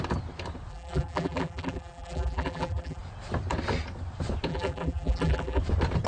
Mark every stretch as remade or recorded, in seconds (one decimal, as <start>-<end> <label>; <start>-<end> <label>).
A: 0.0-0.7 recorded; 0.7-3.0 remade; 3.0-4.5 recorded; 4.5-5.6 remade; 5.6-6.1 recorded